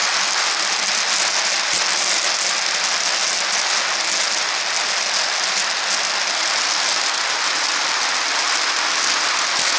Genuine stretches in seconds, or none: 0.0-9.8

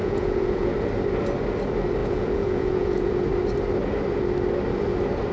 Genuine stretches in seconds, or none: 0.7-2.0; 3.1-5.3

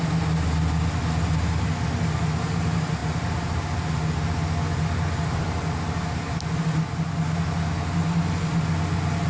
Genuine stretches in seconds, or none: 0.0-9.3

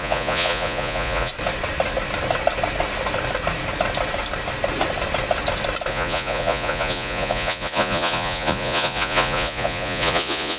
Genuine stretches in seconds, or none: 1.3-5.9

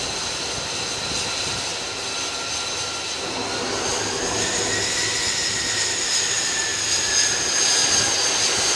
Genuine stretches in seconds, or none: 0.0-8.8

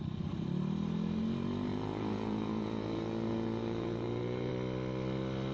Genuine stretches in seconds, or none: 0.0-1.7; 4.5-5.5

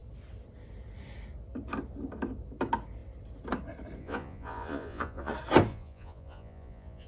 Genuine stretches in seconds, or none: 0.0-4.0; 5.3-5.7